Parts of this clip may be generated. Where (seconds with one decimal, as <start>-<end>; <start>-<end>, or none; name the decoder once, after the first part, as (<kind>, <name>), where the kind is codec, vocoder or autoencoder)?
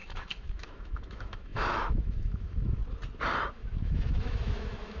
0.0-2.8 (autoencoder, DAC-VAE); 3.5-5.0